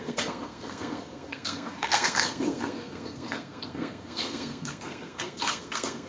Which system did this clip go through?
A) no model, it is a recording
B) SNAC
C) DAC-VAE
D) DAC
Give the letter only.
B